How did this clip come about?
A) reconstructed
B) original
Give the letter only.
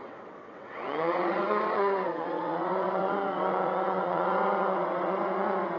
A